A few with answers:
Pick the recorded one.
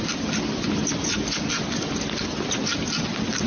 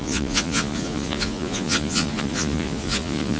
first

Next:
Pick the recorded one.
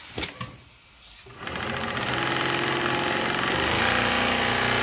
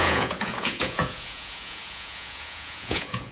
first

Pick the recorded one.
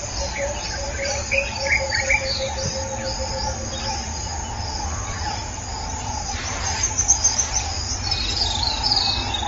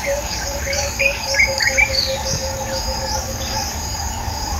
first